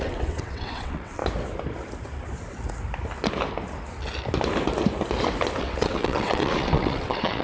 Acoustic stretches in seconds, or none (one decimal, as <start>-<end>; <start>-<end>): 1.2-5.6